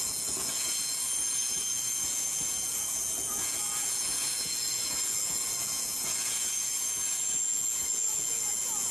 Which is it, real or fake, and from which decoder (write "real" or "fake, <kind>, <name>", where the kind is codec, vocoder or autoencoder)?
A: fake, vocoder, Vocos